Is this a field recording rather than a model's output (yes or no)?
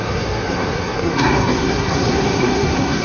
no